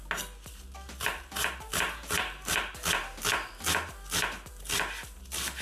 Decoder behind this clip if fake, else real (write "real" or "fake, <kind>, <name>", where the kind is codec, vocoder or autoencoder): real